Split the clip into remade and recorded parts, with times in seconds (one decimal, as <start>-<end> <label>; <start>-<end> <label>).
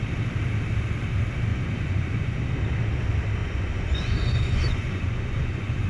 0.0-1.5 recorded; 1.5-2.4 remade; 2.4-3.4 recorded; 3.4-5.9 remade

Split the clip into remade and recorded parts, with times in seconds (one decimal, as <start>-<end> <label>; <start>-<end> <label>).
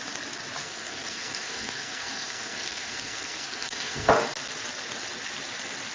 0.0-0.6 recorded; 0.6-4.1 remade; 4.1-5.9 recorded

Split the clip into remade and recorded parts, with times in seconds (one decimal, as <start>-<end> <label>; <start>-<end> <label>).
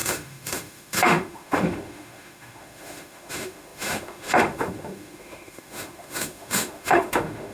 0.0-7.5 remade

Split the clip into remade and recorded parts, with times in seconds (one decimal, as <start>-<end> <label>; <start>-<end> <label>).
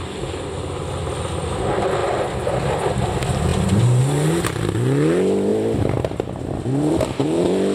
0.0-7.7 recorded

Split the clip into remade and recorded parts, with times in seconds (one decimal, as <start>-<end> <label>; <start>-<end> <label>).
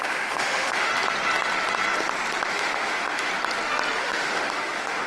0.0-0.9 remade; 0.9-2.5 recorded; 2.5-3.3 remade; 3.3-4.0 recorded; 4.0-5.1 remade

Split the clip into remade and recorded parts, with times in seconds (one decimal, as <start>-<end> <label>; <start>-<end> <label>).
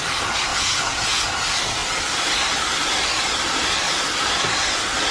0.0-0.5 recorded; 0.5-1.3 remade; 1.3-5.1 recorded